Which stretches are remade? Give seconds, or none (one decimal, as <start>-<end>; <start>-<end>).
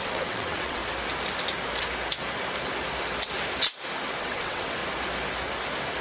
0.0-0.8; 4.2-4.8